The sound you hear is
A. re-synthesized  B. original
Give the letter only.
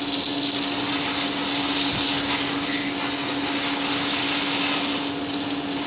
B